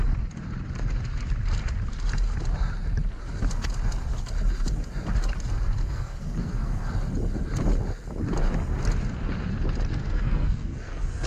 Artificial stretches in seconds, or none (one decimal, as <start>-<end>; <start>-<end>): 5.8-6.9; 9.9-11.3